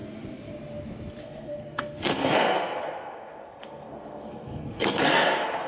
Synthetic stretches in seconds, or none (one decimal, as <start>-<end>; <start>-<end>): 1.2-5.7